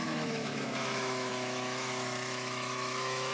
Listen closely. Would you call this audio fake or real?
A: fake